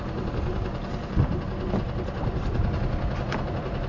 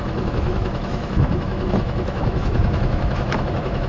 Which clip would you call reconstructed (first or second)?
second